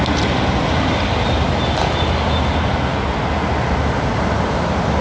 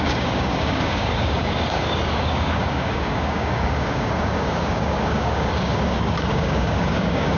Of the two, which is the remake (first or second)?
second